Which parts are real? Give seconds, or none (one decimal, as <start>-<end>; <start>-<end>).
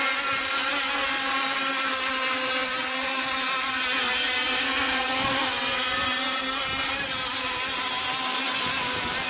0.0-9.3